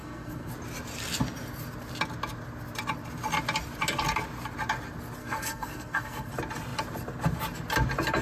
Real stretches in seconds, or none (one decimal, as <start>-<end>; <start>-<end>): 0.5-5.2; 6.3-8.2